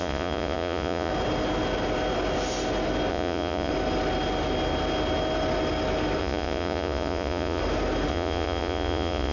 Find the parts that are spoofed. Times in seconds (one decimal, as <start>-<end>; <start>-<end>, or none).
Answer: 0.0-1.1; 3.1-3.7; 6.2-7.6; 8.1-9.3